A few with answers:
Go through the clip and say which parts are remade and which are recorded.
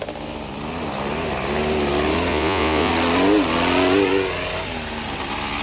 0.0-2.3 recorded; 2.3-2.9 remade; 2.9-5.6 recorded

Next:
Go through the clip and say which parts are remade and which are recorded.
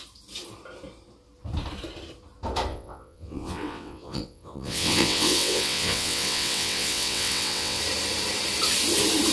0.0-2.7 recorded; 2.7-7.8 remade; 7.8-9.3 recorded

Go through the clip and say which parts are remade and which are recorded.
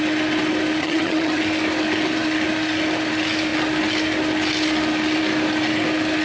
0.0-0.8 recorded; 0.8-1.4 remade; 1.4-6.2 recorded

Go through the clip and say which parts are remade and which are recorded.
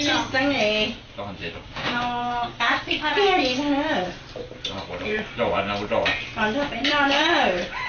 0.0-1.4 recorded; 1.4-3.1 remade; 3.1-7.9 recorded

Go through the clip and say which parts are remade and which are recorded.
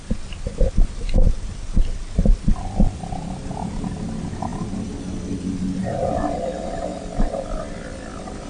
0.0-8.5 recorded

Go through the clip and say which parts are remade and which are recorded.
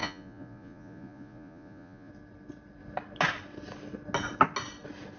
0.0-2.1 remade; 2.1-5.2 recorded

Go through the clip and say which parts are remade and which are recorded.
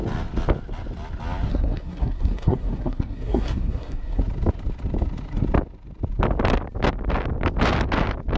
0.0-1.5 recorded; 1.5-4.2 remade; 4.2-8.4 recorded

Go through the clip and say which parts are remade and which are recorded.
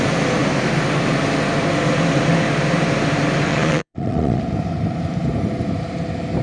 0.0-3.5 recorded; 3.5-4.4 remade; 4.4-6.4 recorded